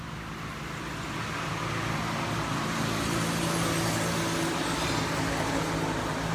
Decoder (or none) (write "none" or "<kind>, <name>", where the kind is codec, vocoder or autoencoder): none